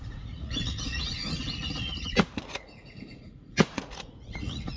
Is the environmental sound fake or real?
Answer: fake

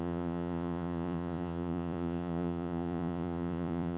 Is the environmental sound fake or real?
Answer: fake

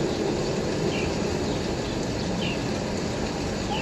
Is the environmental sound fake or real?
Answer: real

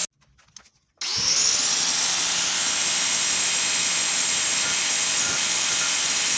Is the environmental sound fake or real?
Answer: real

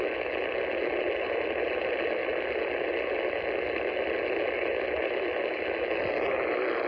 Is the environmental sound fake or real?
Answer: real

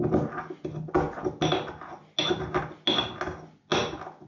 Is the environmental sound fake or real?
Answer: real